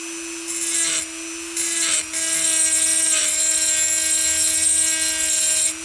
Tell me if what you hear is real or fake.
real